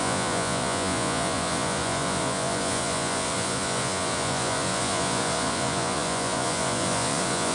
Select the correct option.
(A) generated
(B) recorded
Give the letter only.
A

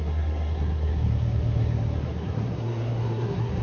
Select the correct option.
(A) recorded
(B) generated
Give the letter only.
B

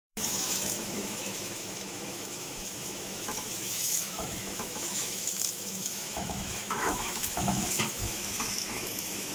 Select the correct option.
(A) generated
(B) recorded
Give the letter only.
A